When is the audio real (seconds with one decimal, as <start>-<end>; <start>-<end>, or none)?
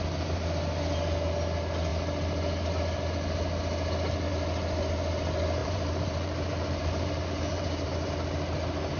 0.0-5.6; 8.1-9.0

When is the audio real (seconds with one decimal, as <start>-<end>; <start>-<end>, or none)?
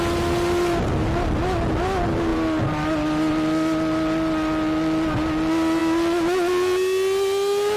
0.0-2.3; 3.3-7.8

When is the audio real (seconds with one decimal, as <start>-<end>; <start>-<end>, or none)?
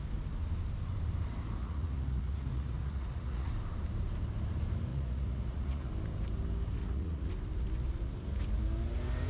0.0-1.6; 3.5-4.9; 5.9-6.8; 7.3-9.3